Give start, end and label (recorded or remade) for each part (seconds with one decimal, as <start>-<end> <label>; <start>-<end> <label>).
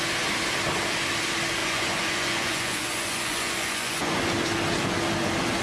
0.0-1.6 recorded; 1.6-4.2 remade; 4.2-5.6 recorded